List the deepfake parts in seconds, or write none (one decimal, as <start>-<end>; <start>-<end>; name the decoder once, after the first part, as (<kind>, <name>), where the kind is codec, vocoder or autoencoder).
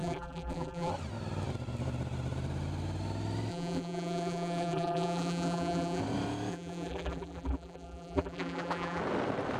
0.0-0.9 (vocoder, BigVGAN v2); 3.5-6.0; 6.5-9.0